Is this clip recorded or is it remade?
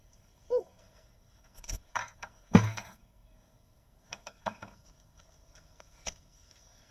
remade